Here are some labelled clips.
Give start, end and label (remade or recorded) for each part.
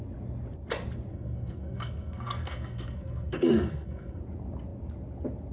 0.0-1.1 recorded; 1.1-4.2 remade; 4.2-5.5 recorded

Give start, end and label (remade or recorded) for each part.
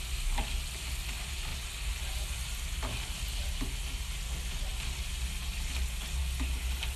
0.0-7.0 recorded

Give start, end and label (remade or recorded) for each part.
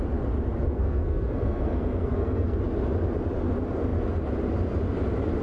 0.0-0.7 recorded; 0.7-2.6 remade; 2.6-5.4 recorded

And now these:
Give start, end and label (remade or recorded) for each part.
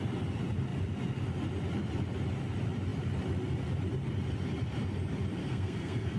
0.0-5.4 recorded; 5.4-6.2 remade